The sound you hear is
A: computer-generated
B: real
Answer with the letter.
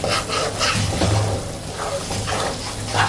B